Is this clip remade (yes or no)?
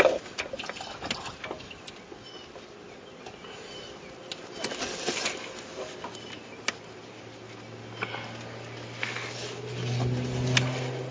no